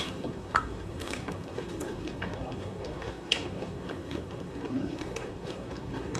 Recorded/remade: remade